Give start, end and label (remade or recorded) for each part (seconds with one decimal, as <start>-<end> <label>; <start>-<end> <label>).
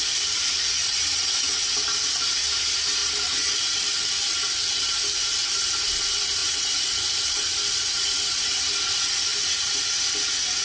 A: 0.0-0.8 recorded; 0.8-1.6 remade; 1.6-6.4 recorded; 6.4-7.2 remade; 7.2-10.6 recorded